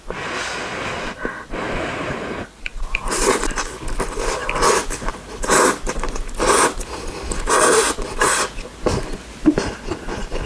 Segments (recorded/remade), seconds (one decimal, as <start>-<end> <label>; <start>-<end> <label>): 0.0-10.5 recorded